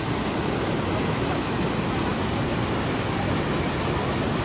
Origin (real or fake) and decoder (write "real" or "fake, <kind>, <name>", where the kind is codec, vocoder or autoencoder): real